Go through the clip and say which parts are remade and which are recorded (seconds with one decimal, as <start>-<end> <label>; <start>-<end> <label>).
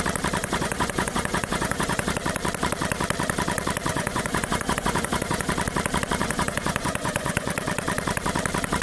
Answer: 0.0-0.4 recorded; 0.4-2.1 remade; 2.1-3.9 recorded; 3.9-5.5 remade; 5.5-6.2 recorded; 6.2-7.5 remade; 7.5-8.8 recorded